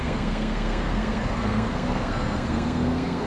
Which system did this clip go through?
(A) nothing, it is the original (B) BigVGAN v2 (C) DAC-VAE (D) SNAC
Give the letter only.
D